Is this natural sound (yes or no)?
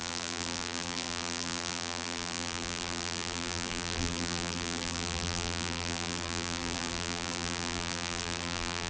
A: no